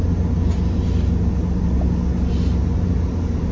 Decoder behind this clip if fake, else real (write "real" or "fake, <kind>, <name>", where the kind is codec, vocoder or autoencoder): real